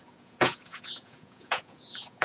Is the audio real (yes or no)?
no